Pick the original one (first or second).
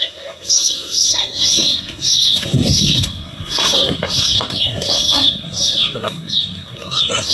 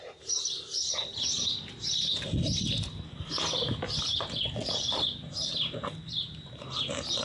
second